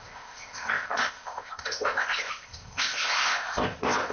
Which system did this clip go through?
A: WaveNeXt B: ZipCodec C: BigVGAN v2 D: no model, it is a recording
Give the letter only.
B